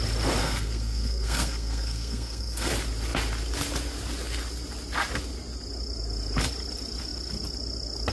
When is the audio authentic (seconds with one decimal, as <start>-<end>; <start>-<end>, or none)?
0.0-0.4; 2.7-8.1